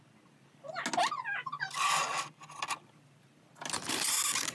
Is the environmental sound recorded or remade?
recorded